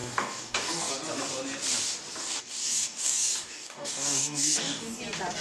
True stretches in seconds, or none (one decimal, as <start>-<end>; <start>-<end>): 0.9-2.2; 5.0-5.4